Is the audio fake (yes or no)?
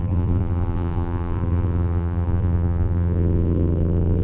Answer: yes